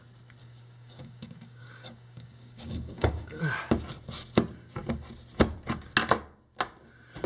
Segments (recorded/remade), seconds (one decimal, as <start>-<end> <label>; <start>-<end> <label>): 0.0-0.4 recorded; 0.4-3.4 remade; 3.4-7.3 recorded